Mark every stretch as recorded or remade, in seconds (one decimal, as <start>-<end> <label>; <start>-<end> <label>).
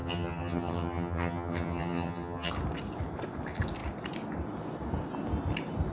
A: 0.0-2.5 remade; 2.5-5.9 recorded